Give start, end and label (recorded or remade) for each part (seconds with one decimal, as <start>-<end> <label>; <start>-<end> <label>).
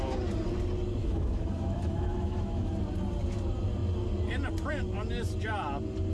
0.0-1.0 recorded; 1.0-2.7 remade; 2.7-6.1 recorded